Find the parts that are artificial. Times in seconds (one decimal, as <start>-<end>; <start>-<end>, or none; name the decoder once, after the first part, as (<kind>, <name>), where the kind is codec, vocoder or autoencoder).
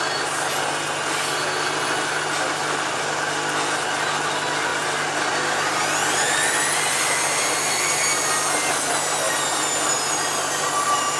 none